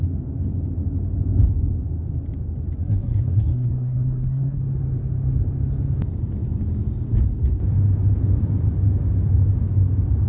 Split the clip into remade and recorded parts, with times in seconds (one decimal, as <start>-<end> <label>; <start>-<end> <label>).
0.0-2.8 recorded; 2.8-4.6 remade; 4.6-10.3 recorded